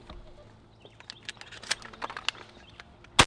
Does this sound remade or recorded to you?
recorded